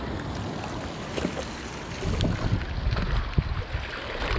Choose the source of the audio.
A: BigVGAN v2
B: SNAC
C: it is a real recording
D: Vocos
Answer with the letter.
C